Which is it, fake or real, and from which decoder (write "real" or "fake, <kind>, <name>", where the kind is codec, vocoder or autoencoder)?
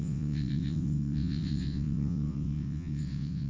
fake, vocoder, WaveNeXt